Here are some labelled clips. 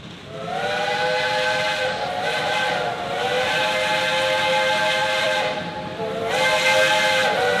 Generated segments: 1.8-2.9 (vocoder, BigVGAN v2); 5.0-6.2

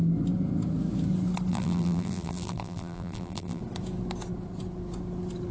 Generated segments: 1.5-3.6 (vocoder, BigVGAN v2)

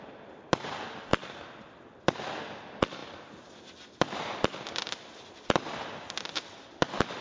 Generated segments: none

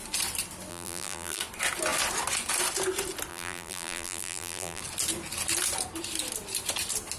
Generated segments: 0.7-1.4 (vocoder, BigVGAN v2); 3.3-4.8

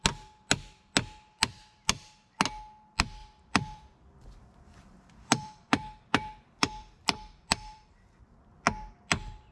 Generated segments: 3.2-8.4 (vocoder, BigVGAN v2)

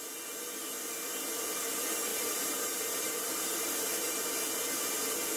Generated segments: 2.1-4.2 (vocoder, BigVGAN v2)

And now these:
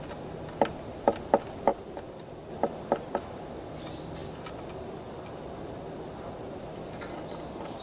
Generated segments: 1.7-2.5 (vocoder, BigVGAN v2)

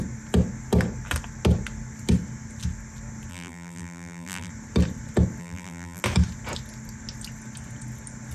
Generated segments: 3.3-4.5 (vocoder, BigVGAN v2); 5.4-6.0